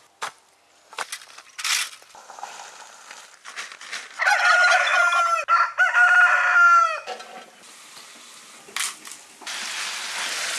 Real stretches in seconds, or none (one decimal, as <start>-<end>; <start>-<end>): 0.0-10.6